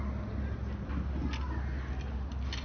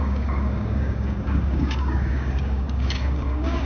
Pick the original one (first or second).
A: first